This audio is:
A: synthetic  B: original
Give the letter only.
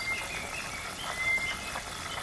B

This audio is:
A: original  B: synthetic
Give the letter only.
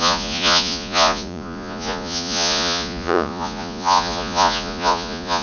B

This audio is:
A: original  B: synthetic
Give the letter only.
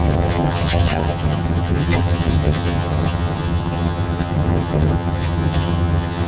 B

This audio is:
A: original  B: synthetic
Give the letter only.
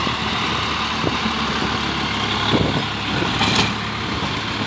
A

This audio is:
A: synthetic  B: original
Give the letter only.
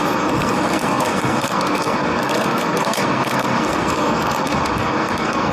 A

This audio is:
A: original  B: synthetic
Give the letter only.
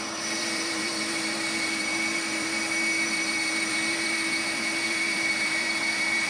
B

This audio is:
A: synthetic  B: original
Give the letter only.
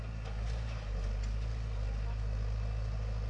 B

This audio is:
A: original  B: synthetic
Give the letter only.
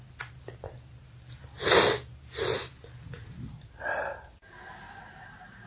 A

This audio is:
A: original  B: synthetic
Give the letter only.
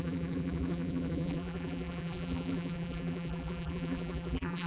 B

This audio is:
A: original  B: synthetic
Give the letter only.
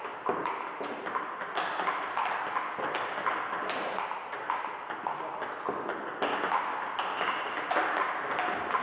A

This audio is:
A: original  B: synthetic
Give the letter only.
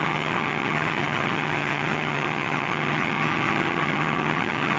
B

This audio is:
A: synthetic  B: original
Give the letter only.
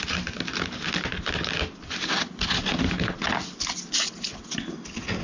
B